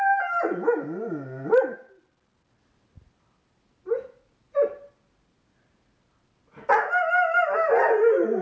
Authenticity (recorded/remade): recorded